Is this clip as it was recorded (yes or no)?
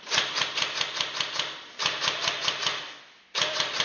yes